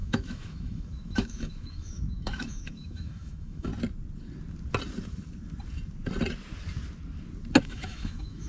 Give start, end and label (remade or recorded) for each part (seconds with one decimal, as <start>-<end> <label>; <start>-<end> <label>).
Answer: 0.0-3.7 remade; 3.7-7.6 recorded; 7.6-8.5 remade